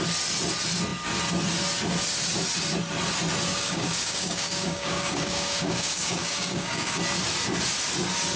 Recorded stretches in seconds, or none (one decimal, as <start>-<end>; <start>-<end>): 0.0-3.5; 7.0-8.4

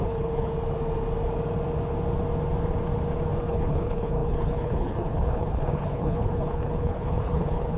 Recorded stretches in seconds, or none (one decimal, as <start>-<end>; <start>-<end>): 0.5-3.4

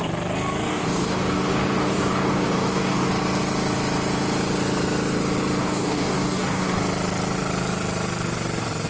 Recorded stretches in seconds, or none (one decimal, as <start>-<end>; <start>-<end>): 0.0-0.7; 3.1-5.6; 6.8-8.9

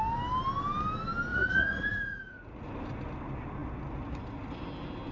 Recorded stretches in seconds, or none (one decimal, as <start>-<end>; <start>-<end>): 0.0-1.3; 2.6-5.1